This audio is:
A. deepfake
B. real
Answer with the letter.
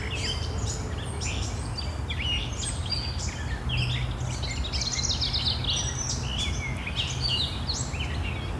B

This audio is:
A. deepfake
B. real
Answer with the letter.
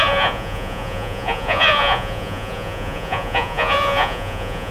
A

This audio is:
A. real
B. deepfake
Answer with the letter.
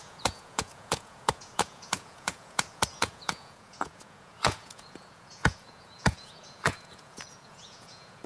B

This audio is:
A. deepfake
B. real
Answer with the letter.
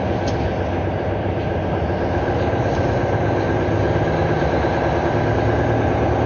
B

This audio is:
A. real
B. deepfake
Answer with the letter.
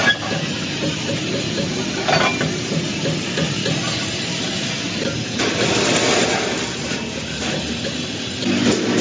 A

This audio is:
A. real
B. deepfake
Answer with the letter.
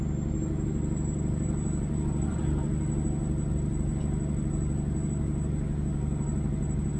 A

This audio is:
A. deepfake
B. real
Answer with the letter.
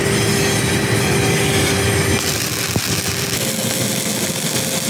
B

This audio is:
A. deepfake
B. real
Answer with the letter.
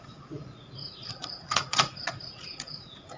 A